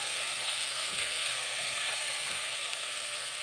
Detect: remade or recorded remade